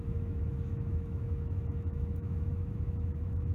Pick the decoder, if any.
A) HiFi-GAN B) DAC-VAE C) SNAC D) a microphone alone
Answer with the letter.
B